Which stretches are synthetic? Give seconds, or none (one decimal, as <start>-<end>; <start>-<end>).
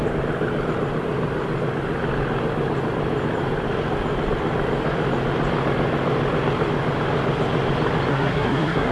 8.1-8.9